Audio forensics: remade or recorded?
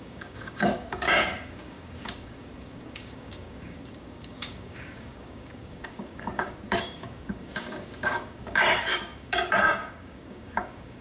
remade